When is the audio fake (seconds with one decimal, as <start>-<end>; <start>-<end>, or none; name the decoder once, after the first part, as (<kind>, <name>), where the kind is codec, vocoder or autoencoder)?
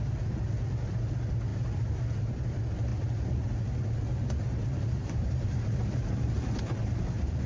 1.5-2.4 (vocoder, BigVGAN v2); 5.0-7.5